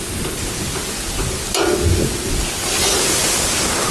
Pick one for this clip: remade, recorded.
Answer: recorded